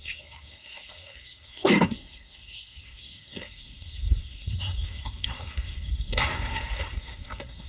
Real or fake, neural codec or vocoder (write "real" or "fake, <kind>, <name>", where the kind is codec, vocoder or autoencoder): fake, codec, SNAC